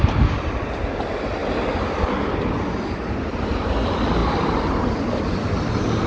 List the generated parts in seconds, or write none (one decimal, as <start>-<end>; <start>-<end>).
none